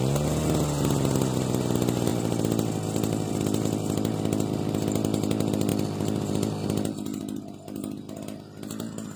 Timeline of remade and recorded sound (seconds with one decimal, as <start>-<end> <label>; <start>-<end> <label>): 0.0-9.2 recorded